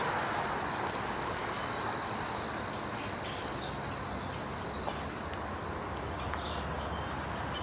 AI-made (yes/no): no